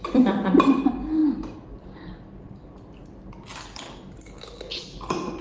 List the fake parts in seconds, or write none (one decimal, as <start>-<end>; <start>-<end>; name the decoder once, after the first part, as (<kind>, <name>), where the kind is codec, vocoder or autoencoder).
none